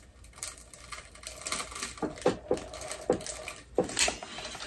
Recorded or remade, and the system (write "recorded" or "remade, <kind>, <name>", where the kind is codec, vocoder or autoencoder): recorded